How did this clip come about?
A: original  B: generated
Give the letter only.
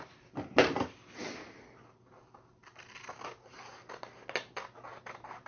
A